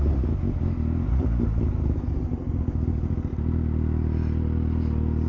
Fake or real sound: real